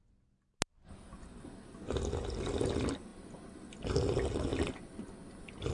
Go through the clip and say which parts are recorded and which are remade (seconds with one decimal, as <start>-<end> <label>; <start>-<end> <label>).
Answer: 0.0-4.5 recorded; 4.5-5.7 remade